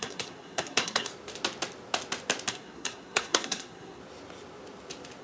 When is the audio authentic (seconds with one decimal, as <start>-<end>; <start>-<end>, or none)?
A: 1.1-2.5; 4.0-5.2